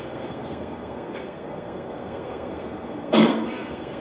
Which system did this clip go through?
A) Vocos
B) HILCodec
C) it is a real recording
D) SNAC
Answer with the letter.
D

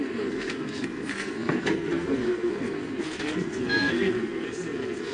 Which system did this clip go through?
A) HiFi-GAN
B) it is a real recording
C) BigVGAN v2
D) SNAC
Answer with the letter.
D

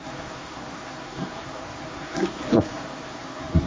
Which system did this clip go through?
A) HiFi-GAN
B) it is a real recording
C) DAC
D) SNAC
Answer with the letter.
D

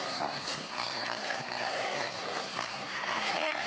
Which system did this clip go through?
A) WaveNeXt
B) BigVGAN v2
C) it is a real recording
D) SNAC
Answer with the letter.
D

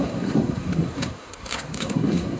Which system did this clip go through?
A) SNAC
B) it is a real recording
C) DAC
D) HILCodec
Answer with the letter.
A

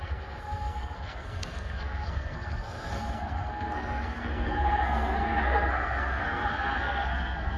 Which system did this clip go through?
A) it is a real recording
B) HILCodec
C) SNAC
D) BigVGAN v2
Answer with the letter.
C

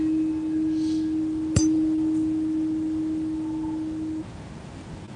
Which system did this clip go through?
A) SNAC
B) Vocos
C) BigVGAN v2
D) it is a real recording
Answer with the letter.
D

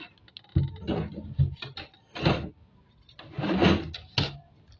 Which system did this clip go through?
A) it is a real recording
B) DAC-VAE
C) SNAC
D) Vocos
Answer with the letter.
A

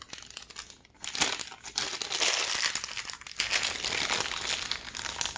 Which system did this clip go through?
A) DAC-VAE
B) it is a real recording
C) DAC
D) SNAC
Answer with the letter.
B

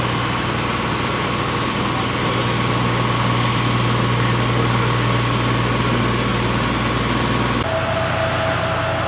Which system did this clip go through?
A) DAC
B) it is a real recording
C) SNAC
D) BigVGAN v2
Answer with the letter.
B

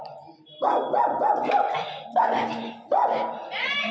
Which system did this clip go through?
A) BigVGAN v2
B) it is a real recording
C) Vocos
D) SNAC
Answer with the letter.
B